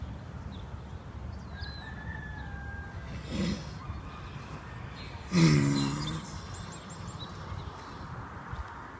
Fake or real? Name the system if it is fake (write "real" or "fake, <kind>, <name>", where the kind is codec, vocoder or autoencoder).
real